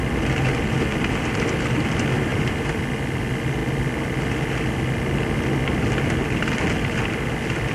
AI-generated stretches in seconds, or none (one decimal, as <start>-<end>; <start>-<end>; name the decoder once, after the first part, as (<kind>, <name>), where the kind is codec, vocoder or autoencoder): 2.3-2.8 (vocoder, BigVGAN v2)